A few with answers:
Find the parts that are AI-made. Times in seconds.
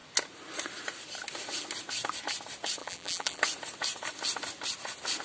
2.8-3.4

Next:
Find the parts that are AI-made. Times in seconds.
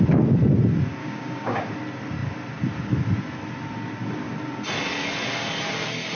1.0-1.6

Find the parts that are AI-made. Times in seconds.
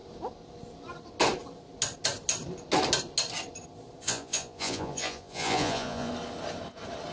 4.0-6.1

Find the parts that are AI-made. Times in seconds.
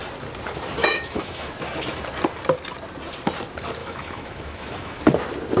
0.8-1.5; 3.8-5.0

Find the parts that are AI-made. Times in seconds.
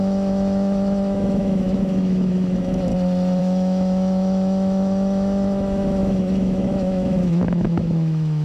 0.0-2.9; 3.4-8.4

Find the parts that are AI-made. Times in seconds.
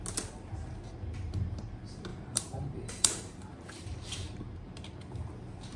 2.1-4.4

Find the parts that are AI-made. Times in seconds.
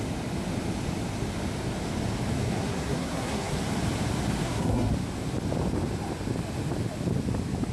2.4-3.6; 4.4-4.9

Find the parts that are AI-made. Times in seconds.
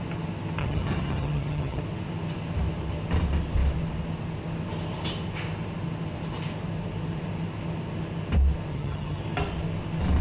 0.6-1.8; 8.7-9.2